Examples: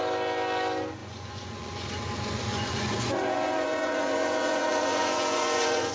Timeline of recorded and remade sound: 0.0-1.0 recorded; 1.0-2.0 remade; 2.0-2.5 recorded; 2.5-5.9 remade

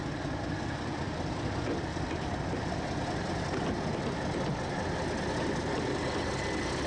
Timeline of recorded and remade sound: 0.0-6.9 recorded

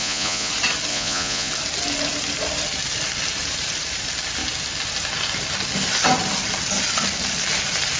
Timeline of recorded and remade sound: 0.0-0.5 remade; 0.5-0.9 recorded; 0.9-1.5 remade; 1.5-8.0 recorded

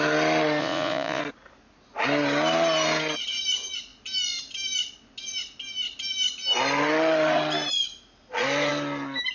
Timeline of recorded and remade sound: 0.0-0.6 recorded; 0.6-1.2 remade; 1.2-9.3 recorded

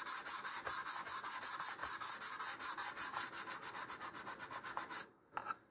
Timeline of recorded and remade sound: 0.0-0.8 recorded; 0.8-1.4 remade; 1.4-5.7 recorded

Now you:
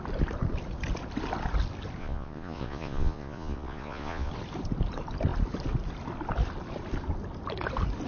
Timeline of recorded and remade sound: 0.0-2.0 recorded; 2.0-4.3 remade; 4.3-8.1 recorded